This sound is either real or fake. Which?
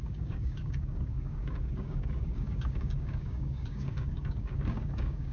fake